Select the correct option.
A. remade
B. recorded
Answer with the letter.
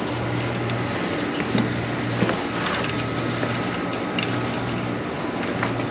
B